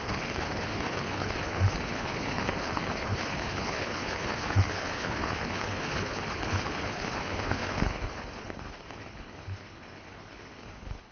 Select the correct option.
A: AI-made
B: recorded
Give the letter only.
A